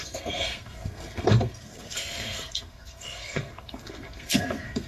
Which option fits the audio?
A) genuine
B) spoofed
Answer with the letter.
B